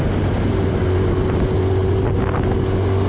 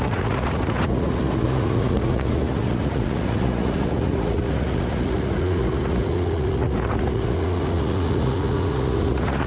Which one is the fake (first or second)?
second